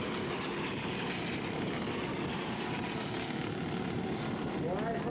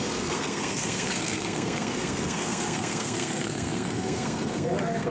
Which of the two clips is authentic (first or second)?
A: first